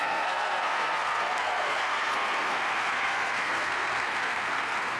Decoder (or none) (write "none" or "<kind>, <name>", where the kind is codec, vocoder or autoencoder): codec, SNAC